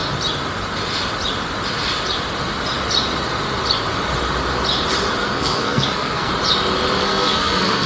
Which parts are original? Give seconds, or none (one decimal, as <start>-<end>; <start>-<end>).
0.0-5.2; 6.3-7.0